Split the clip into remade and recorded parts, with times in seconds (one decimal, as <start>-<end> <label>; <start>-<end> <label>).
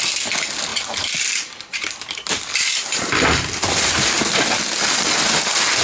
0.0-0.7 recorded; 0.7-4.2 remade; 4.2-5.8 recorded